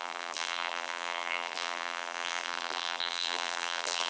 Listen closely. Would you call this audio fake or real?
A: fake